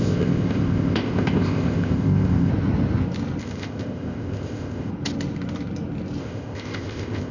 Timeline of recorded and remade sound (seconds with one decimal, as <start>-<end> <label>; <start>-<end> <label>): 0.0-2.5 remade; 2.5-3.4 recorded; 3.4-4.9 remade; 4.9-6.2 recorded; 6.2-7.3 remade